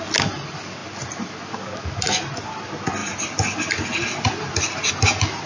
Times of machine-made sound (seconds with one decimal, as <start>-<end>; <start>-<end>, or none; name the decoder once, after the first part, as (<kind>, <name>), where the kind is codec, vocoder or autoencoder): 3.0-4.9 (vocoder, BigVGAN v2)